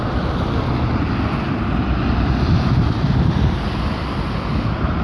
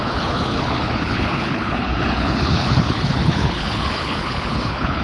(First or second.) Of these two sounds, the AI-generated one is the second